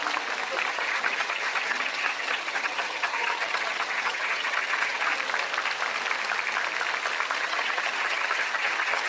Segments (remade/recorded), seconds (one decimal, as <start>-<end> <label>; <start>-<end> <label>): 0.0-0.7 recorded; 0.7-5.1 remade; 5.1-7.4 recorded; 7.4-9.1 remade